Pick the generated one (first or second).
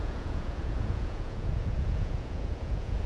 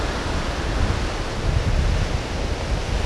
first